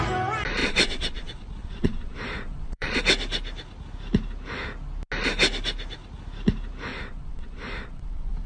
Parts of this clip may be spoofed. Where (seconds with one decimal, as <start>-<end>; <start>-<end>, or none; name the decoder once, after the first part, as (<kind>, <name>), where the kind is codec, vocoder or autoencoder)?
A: 0.6-3.0 (vocoder, Vocos); 6.9-8.5